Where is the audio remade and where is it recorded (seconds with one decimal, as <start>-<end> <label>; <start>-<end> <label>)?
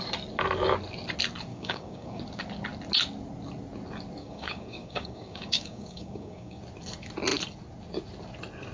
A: 0.0-1.5 recorded; 1.5-2.2 remade; 2.2-4.2 recorded; 4.2-6.6 remade; 6.6-8.7 recorded